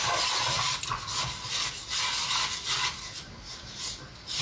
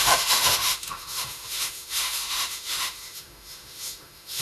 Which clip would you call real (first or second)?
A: first